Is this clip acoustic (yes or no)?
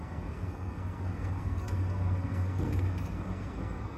no